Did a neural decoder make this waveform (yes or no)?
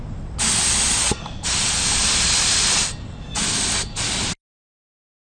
no